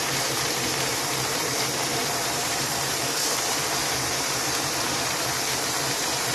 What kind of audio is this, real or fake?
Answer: fake